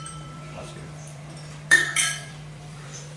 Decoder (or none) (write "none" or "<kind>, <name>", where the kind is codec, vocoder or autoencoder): vocoder, BigVGAN v2